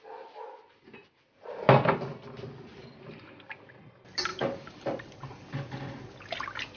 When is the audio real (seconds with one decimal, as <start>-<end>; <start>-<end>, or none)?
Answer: 0.0-1.0; 1.6-4.3; 5.0-6.8